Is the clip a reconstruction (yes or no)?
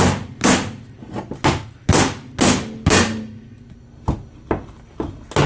no